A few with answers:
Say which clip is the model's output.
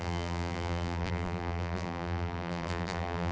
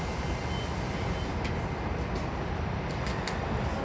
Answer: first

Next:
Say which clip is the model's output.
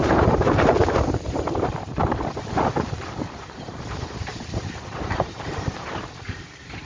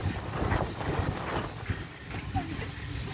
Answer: first